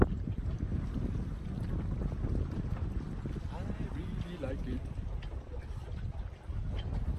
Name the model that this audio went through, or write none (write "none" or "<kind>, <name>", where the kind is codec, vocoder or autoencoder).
none